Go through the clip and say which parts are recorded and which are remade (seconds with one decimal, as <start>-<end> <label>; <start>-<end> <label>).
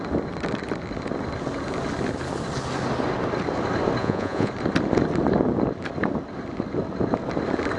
0.0-4.0 recorded; 4.0-4.5 remade; 4.5-7.8 recorded